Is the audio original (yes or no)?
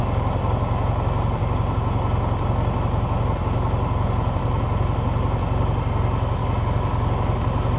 yes